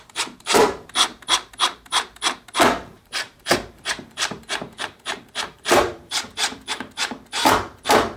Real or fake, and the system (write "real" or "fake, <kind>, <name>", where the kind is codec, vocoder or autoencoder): fake, vocoder, BigVGAN v2